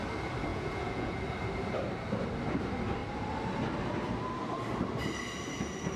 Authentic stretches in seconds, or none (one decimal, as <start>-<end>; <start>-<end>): 0.0-0.5; 1.1-6.0